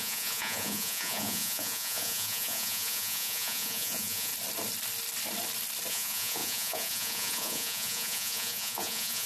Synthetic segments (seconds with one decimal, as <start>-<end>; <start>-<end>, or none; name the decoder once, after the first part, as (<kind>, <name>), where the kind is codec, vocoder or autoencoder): 0.0-4.3 (vocoder, Vocos); 5.9-9.3